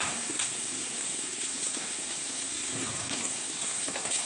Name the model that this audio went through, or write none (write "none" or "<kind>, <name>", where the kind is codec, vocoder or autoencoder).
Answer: codec, SNAC